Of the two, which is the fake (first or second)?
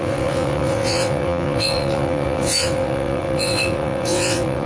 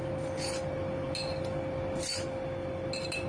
first